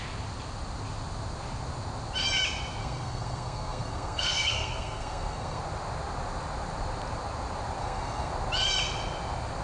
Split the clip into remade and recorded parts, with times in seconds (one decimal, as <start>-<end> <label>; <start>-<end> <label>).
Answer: 0.0-2.8 recorded; 2.8-5.6 remade; 5.6-7.8 recorded; 7.8-8.3 remade; 8.3-9.6 recorded

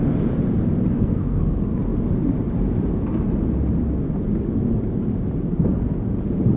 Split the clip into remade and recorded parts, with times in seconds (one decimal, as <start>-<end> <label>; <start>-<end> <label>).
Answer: 0.0-0.9 recorded; 0.9-1.4 remade; 1.4-6.6 recorded

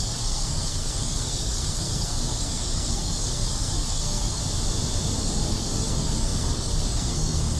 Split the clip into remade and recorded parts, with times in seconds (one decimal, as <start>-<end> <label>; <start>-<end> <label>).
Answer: 0.0-4.4 remade; 4.4-5.2 recorded; 5.2-7.6 remade

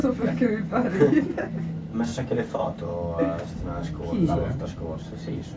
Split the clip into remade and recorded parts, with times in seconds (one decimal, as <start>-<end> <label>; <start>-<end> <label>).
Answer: 0.0-5.6 recorded

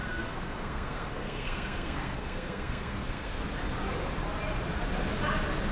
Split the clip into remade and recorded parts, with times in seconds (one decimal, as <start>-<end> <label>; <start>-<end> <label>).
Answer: 0.0-3.4 remade; 3.4-5.7 recorded

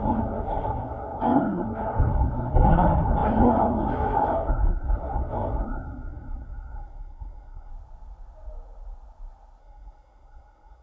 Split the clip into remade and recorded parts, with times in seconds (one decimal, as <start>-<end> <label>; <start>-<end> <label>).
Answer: 0.0-7.7 remade; 7.7-9.6 recorded; 9.6-10.8 remade